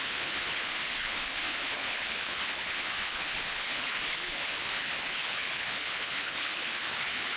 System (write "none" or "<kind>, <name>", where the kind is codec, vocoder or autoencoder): codec, HILCodec